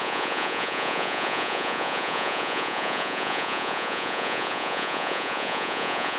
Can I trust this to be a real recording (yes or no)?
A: no